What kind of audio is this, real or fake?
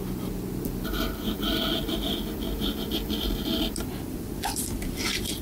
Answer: real